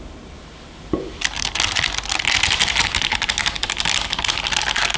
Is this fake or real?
real